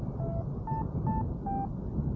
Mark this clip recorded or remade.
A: recorded